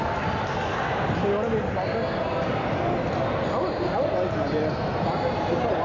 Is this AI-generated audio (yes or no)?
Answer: no